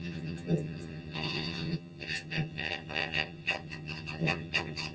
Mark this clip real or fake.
fake